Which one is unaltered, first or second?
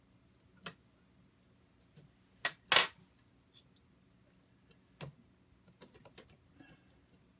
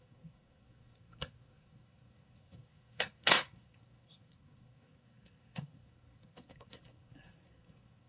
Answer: first